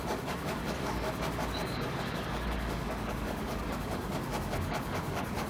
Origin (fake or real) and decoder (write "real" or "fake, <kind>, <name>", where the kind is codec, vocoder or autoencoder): fake, codec, DAC